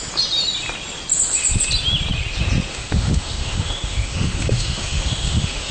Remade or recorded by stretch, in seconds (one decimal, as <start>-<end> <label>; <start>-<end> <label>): 0.0-2.7 recorded; 2.7-5.7 remade